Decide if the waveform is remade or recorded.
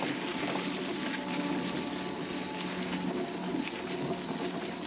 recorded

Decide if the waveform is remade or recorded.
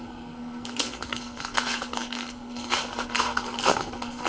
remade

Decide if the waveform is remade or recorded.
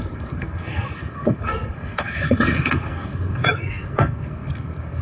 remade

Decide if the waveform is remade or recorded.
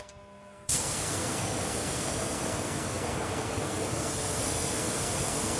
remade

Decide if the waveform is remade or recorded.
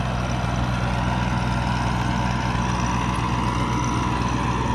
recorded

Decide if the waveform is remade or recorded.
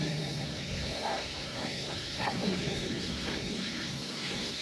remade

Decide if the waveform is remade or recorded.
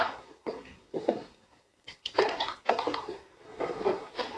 remade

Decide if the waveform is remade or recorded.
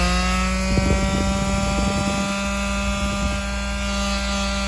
recorded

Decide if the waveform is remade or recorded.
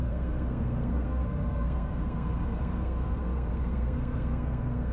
remade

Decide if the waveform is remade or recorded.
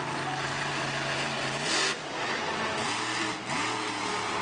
recorded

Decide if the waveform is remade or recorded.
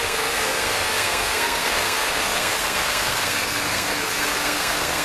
remade